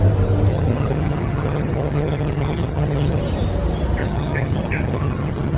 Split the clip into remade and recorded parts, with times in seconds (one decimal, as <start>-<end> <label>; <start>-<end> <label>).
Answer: 0.0-0.5 recorded; 0.5-3.2 remade; 3.2-4.0 recorded; 4.0-5.6 remade